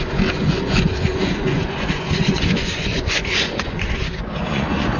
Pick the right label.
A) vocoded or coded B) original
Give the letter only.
A